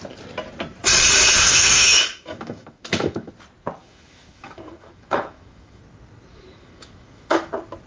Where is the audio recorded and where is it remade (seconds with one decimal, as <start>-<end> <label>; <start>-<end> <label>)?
0.0-1.4 recorded; 1.4-3.3 remade; 3.3-3.8 recorded; 3.8-5.8 remade; 5.8-6.3 recorded; 6.3-7.5 remade; 7.5-7.9 recorded